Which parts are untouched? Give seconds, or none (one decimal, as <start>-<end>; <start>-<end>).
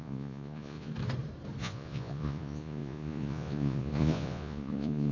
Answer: 0.9-1.6